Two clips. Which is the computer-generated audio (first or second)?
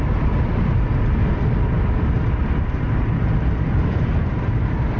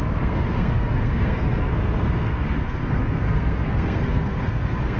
second